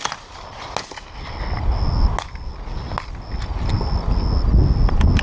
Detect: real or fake real